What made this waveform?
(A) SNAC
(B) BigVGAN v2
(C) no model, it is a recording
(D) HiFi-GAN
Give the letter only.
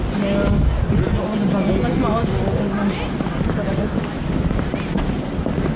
C